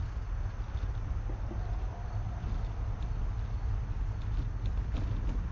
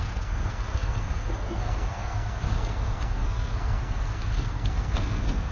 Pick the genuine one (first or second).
first